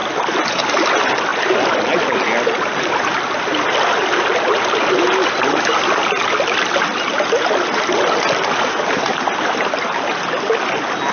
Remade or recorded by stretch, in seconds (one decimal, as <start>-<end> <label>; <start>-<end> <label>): 0.0-0.5 remade; 0.5-1.3 recorded; 1.3-3.8 remade; 3.8-11.1 recorded